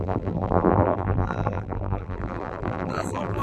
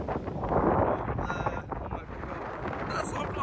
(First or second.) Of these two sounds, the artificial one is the first